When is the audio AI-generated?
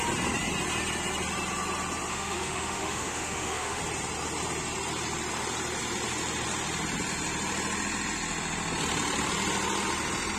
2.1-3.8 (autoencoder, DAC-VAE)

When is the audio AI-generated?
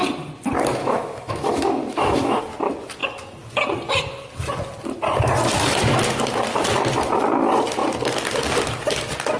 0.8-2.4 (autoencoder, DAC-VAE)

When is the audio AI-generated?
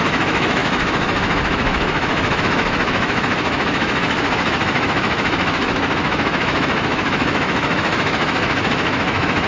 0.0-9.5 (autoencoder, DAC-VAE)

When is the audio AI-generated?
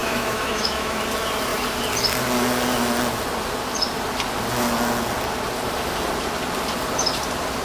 0.0-1.0 (autoencoder, DAC-VAE)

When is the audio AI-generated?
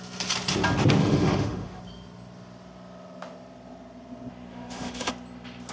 1.0-1.8 (autoencoder, DAC-VAE); 4.5-5.1